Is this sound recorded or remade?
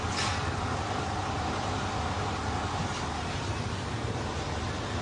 recorded